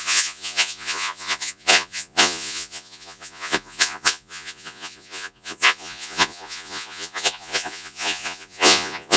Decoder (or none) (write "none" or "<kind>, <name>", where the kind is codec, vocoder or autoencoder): vocoder, Vocos